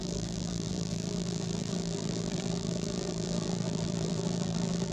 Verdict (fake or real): fake